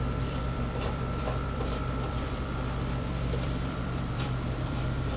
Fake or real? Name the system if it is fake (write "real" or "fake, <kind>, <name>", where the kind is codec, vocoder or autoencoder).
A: fake, vocoder, BigVGAN v2